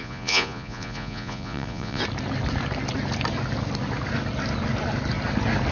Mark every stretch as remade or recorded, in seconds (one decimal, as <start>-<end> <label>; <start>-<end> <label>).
0.0-2.0 remade; 2.0-5.7 recorded